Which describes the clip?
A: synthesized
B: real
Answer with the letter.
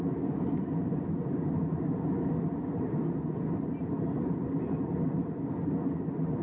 B